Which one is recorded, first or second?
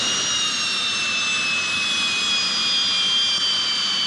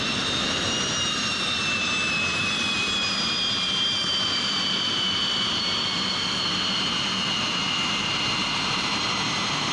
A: first